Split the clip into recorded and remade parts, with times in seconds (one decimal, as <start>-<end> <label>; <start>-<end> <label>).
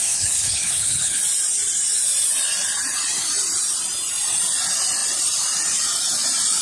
0.0-1.2 remade; 1.2-6.6 recorded